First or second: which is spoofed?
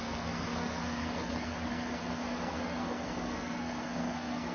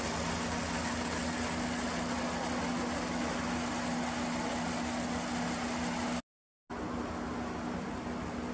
first